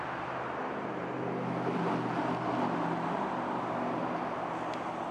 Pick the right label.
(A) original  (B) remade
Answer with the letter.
A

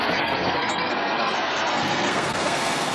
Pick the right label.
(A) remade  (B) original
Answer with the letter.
A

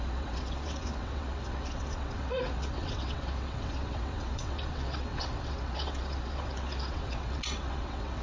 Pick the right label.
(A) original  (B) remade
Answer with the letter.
B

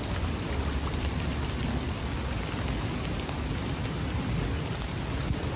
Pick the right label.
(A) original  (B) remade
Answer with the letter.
A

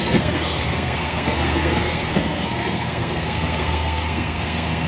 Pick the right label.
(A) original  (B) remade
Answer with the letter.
B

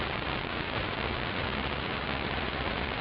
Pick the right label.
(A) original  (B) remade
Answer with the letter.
B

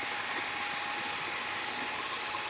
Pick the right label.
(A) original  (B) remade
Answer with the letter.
A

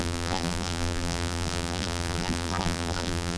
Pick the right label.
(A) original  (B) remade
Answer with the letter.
B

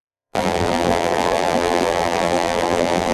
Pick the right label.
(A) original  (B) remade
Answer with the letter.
B